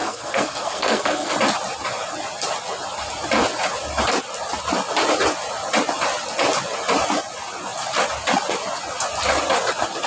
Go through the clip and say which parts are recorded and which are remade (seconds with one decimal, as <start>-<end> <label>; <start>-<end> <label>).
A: 0.0-1.3 remade; 1.3-10.1 recorded